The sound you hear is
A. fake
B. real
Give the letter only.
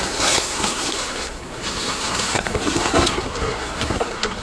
A